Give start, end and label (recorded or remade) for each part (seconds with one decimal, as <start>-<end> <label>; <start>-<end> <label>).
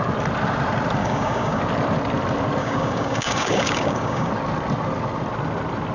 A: 0.0-1.0 recorded; 1.0-1.6 remade; 1.6-2.6 recorded; 2.6-4.3 remade; 4.3-5.9 recorded